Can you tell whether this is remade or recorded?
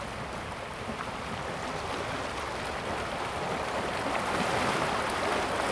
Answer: recorded